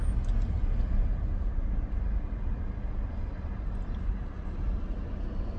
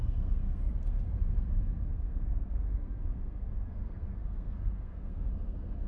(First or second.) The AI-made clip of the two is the second